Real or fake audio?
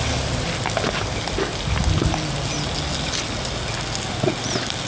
real